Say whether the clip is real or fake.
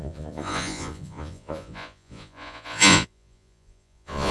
fake